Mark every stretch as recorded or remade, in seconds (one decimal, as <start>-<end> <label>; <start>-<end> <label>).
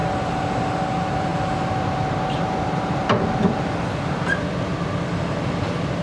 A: 0.0-6.0 recorded